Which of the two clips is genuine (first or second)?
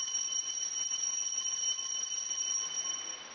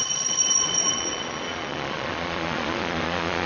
first